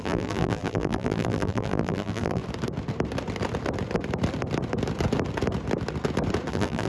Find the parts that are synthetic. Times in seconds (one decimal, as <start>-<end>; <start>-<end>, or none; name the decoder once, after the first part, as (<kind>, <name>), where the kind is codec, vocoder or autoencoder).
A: 0.0-2.4 (vocoder, BigVGAN v2); 6.5-6.9